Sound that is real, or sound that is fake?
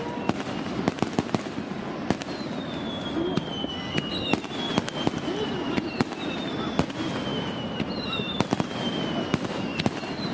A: real